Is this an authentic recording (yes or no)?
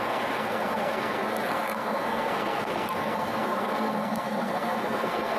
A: no